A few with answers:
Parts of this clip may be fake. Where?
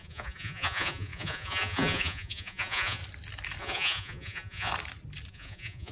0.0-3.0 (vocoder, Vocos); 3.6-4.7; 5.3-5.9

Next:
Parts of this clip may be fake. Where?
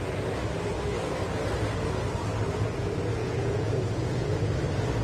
3.2-4.5 (vocoder, Vocos)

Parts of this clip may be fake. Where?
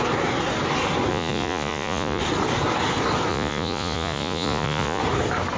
1.1-2.2 (vocoder, Vocos); 3.3-5.0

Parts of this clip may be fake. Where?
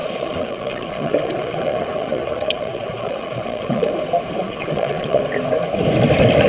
0.0-3.9 (vocoder, Vocos); 4.4-5.2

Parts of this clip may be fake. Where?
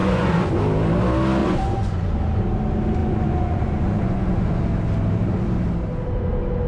0.0-0.6 (vocoder, Vocos); 1.4-2.2; 3.0-4.6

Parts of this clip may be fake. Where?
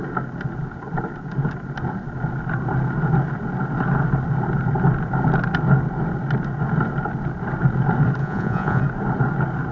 8.2-8.8 (vocoder, Vocos)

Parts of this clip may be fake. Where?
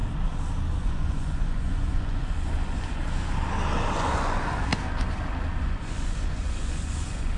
0.8-3.0 (vocoder, Vocos); 3.9-4.7; 5.6-7.4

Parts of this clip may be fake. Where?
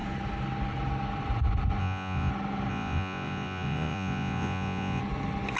1.8-2.3 (vocoder, Vocos); 2.7-5.0